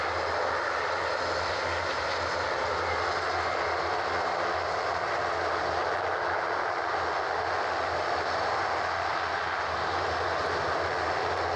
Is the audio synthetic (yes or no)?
no